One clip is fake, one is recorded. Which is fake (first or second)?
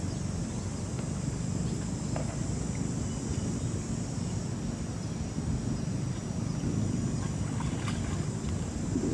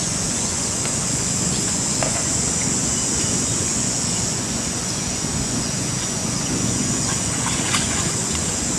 second